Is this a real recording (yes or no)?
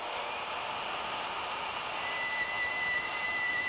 yes